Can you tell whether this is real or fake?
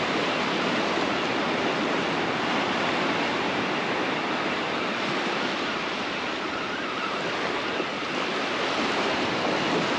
real